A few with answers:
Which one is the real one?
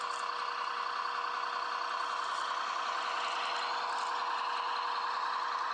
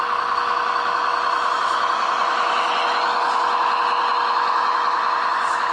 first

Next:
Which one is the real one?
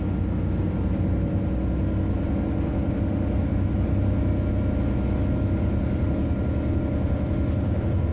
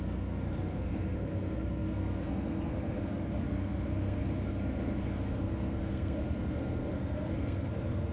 first